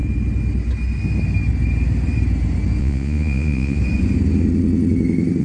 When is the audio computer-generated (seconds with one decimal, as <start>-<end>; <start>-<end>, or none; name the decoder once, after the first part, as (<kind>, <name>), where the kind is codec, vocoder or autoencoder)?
2.8-3.8 (vocoder, Vocos)